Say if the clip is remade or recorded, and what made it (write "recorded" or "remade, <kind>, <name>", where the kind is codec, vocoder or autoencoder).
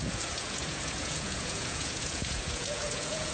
remade, vocoder, Vocos